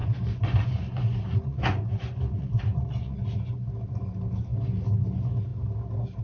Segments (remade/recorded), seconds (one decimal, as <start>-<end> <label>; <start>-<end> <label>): 0.0-3.7 remade; 3.7-6.2 recorded